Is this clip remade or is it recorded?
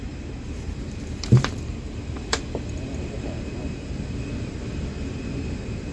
remade